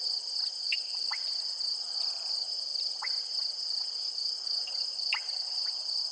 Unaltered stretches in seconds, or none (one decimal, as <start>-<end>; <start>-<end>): 0.0-0.7; 1.2-6.1